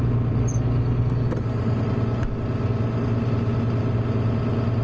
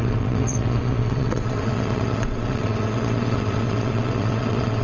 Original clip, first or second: first